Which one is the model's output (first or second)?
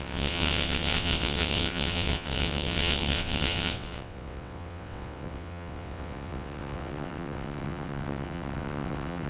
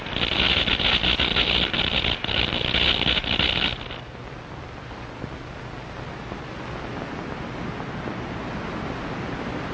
first